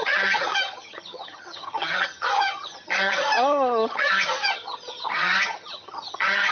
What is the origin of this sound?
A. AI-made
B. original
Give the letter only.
A